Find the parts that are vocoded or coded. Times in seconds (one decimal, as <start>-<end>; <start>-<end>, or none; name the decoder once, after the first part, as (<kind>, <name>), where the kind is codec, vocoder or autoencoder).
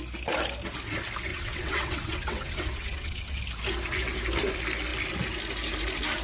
1.3-3.4 (vocoder, WaveNeXt)